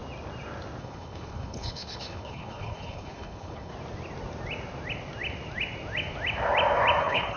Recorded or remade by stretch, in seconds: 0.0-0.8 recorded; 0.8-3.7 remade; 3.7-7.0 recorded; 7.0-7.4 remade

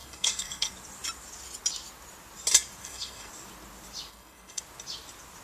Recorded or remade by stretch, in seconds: 0.0-0.7 remade; 0.7-2.8 recorded; 2.8-3.3 remade; 3.3-4.1 recorded; 4.1-4.6 remade; 4.6-5.4 recorded

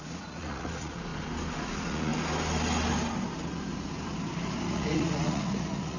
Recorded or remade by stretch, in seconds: 0.0-1.1 remade; 1.1-1.6 recorded; 1.6-2.1 remade; 2.1-4.7 recorded; 4.7-6.0 remade